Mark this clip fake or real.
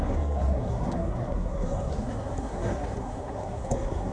fake